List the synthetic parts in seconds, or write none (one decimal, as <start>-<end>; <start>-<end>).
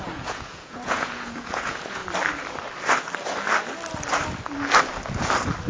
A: 0.0-2.0